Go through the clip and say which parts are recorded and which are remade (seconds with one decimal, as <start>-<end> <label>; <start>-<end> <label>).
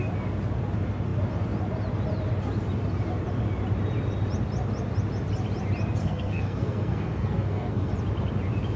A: 0.0-6.0 recorded; 6.0-7.9 remade; 7.9-8.8 recorded